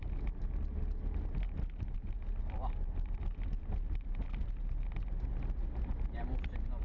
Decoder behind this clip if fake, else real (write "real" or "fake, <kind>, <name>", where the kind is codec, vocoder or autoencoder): real